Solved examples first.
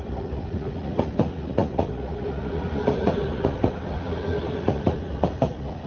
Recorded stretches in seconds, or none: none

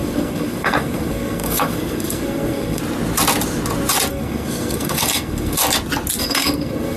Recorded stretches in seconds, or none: 2.8-4.1; 5.6-6.2

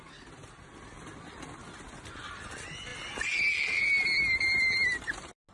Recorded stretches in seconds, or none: 0.0-5.5